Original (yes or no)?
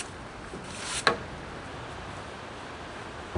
yes